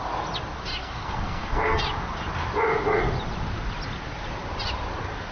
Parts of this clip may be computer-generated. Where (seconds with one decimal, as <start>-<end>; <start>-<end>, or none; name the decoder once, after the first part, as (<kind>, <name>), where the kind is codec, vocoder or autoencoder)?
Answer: 0.8-1.8 (codec, SNAC)